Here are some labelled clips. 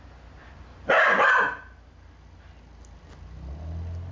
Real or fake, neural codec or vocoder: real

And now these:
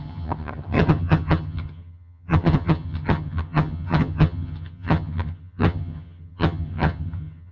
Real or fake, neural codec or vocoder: fake, vocoder, HiFi-GAN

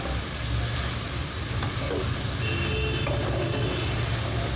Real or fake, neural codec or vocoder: real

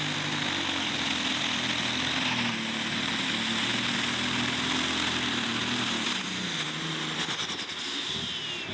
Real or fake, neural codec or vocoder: real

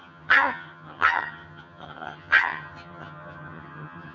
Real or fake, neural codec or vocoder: fake, vocoder, HiFi-GAN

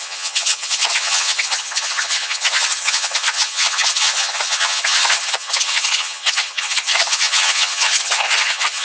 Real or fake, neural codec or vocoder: fake, vocoder, HiFi-GAN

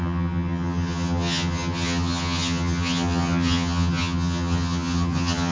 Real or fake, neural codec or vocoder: fake, vocoder, HiFi-GAN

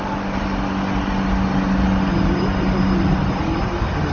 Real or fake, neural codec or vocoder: real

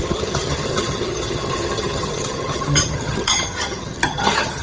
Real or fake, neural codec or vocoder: fake, vocoder, HiFi-GAN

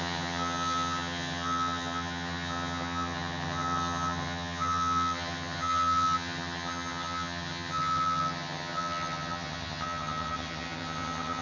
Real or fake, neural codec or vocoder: fake, vocoder, HiFi-GAN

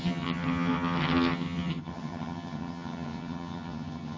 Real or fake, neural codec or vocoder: fake, vocoder, HiFi-GAN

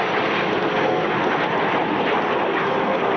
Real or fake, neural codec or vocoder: real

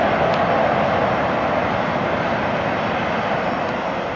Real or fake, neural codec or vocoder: real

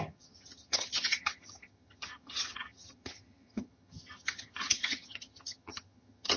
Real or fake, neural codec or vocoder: fake, vocoder, HiFi-GAN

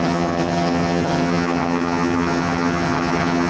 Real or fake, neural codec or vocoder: fake, vocoder, HiFi-GAN